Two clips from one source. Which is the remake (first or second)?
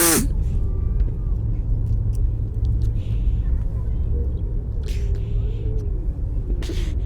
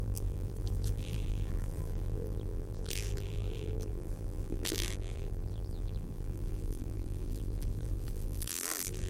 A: second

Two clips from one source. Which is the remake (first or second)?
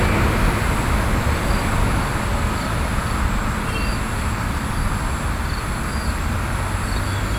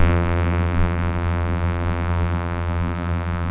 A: second